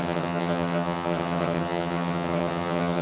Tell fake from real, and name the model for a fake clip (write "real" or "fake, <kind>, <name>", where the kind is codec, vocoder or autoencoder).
fake, vocoder, HiFi-GAN